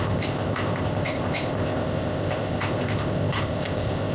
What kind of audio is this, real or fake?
fake